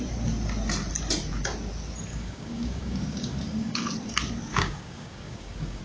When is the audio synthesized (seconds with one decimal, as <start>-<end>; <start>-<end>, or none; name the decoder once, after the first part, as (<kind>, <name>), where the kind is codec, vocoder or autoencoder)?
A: 2.1-3.9 (codec, DAC); 4.5-5.8